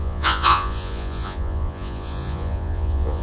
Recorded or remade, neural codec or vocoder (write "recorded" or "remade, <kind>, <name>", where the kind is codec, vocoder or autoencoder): remade, vocoder, Vocos